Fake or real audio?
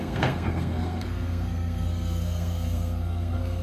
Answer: fake